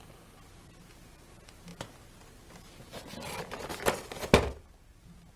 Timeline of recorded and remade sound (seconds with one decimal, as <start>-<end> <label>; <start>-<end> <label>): 0.0-5.4 recorded